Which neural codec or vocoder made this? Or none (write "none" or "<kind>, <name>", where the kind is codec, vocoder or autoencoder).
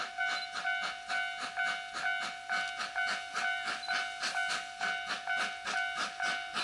none